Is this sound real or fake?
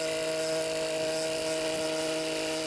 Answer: real